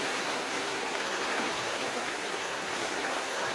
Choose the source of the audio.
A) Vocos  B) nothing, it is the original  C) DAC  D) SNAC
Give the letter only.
D